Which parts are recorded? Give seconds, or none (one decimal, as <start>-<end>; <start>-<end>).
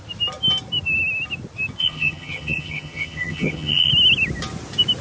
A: 0.0-1.8; 3.9-5.0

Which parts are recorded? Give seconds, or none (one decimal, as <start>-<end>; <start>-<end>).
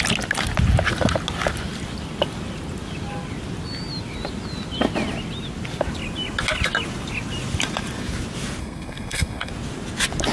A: 0.0-8.6; 9.5-10.3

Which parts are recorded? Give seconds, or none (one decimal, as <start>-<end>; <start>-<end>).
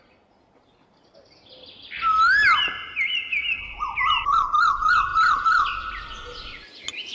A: 0.0-7.1